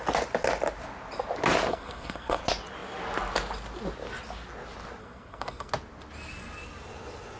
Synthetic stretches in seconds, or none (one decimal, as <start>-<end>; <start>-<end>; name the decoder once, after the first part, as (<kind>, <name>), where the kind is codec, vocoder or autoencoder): 1.7-2.4 (codec, SNAC); 5.0-5.7